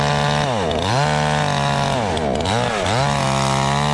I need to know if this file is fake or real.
real